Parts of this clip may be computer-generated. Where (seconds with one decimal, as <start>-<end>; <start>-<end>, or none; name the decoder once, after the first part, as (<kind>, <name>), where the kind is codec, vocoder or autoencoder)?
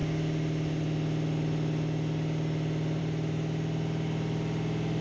none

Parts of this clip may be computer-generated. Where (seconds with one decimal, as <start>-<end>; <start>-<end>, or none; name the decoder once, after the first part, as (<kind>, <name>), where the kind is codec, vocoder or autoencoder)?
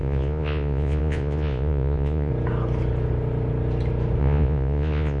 0.0-2.3 (vocoder, Vocos); 4.2-5.2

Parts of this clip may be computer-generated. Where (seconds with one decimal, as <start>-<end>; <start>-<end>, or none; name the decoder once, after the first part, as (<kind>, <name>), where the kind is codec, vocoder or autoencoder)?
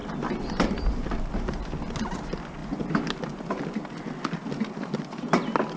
none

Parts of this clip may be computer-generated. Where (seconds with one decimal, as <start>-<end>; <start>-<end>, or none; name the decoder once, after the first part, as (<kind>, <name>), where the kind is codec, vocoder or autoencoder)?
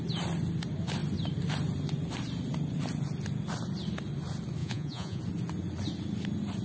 4.6-5.2 (vocoder, Vocos)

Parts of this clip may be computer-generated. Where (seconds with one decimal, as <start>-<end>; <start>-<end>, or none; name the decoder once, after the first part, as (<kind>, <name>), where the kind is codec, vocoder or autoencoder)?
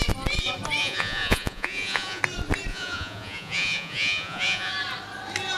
0.8-2.2 (vocoder, Vocos); 2.7-4.7